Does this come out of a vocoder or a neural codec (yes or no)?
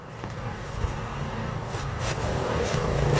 yes